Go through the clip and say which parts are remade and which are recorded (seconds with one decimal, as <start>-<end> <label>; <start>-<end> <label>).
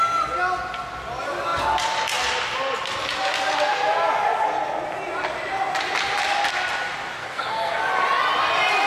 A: 0.0-7.2 recorded; 7.2-7.9 remade; 7.9-8.9 recorded